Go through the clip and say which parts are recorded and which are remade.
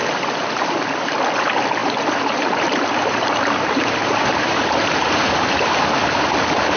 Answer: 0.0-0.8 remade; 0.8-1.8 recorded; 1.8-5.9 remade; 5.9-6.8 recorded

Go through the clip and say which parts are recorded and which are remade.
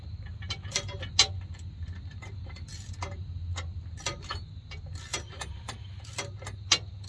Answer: 0.0-5.1 recorded; 5.1-6.1 remade; 6.1-7.1 recorded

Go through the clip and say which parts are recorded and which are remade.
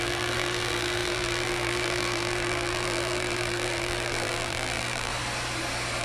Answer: 0.0-5.1 remade; 5.1-6.0 recorded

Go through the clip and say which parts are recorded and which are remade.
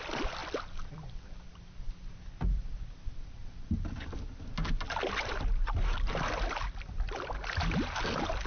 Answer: 0.0-3.4 remade; 3.4-5.2 recorded; 5.2-8.5 remade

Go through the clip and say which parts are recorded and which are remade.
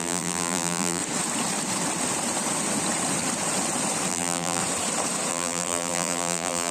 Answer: 0.0-1.0 remade; 1.0-4.1 recorded; 4.1-4.6 remade; 4.6-5.3 recorded; 5.3-6.7 remade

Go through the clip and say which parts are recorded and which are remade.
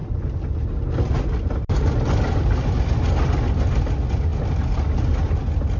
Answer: 0.0-4.3 recorded; 4.3-5.1 remade; 5.1-5.8 recorded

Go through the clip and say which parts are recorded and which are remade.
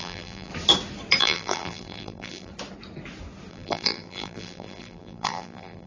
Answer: 0.0-0.5 remade; 0.5-1.2 recorded; 1.2-2.5 remade; 2.5-3.5 recorded; 3.5-5.9 remade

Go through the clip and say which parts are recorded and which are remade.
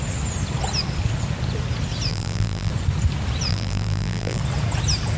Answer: 0.0-2.1 recorded; 2.1-2.7 remade; 2.7-3.5 recorded; 3.5-4.4 remade; 4.4-5.2 recorded